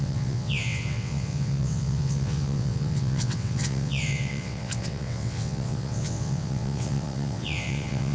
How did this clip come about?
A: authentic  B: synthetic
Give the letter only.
B